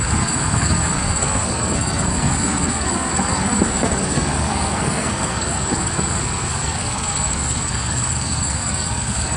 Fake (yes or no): yes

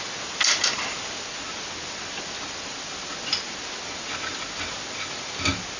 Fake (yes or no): no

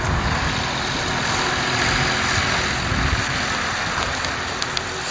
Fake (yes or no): no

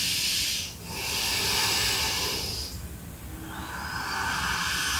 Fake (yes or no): no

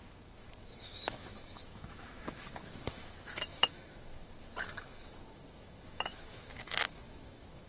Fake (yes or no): yes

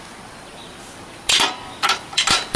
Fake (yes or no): yes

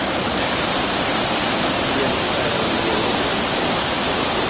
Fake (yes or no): no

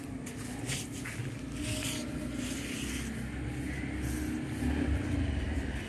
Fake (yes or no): no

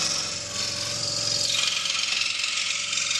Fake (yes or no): no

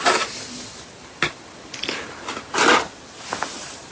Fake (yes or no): no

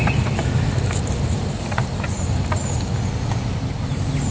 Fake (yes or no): no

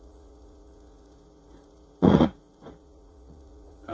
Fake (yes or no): yes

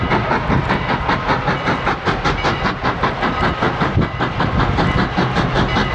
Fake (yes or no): no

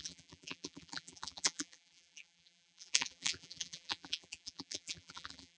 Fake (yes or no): yes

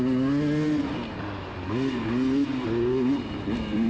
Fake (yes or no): no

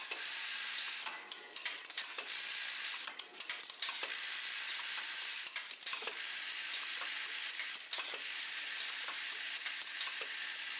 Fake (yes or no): no